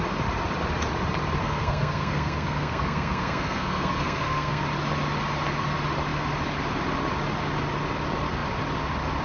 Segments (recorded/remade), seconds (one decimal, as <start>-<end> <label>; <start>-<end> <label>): 0.0-1.4 recorded; 1.4-4.6 remade; 4.6-9.2 recorded